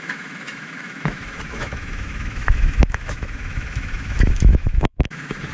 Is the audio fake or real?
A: fake